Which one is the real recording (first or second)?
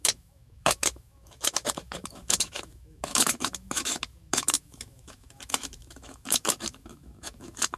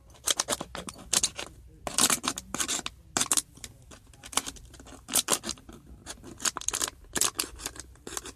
second